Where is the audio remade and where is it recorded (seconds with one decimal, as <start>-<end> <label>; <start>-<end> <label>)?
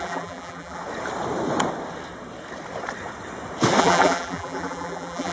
0.0-0.8 remade; 0.8-3.8 recorded; 3.8-5.3 remade